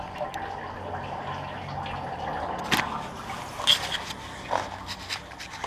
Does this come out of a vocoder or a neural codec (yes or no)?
no